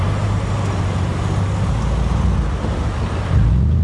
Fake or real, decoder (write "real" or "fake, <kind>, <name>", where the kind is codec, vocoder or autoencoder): real